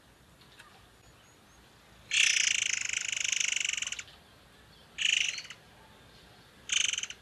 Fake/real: real